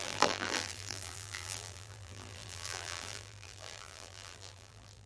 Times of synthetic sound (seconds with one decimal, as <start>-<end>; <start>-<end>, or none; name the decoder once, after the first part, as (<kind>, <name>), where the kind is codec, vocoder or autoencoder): 0.0-5.1 (vocoder, BigVGAN v2)